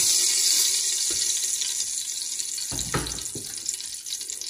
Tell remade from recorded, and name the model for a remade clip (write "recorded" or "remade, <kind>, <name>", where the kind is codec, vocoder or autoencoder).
recorded